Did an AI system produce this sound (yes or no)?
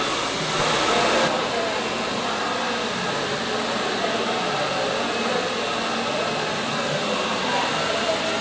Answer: no